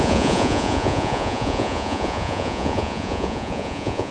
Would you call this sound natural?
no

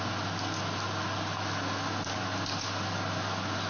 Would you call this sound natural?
yes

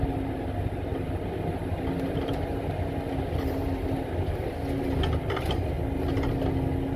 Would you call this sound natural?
yes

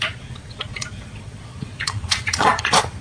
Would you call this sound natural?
no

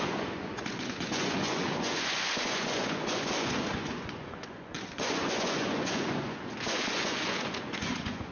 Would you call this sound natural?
no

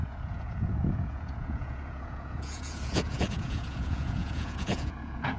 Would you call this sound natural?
no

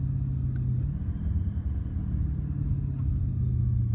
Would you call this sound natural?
yes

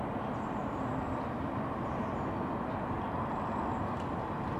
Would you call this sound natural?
yes